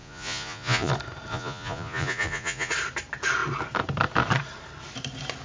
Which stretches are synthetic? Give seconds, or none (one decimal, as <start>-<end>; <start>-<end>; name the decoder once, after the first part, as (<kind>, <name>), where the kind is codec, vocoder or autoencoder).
0.0-0.9 (vocoder, Vocos); 1.3-2.7